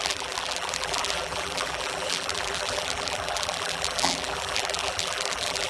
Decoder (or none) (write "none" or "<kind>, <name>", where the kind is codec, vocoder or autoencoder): vocoder, BigVGAN v2